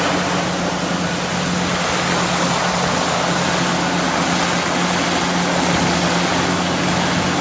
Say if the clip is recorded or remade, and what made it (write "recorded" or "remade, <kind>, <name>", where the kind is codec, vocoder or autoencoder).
recorded